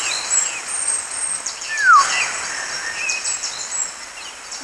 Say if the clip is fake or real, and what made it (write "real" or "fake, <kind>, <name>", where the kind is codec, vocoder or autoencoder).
real